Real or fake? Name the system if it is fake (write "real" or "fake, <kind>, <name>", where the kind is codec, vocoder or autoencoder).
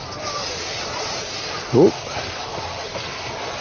real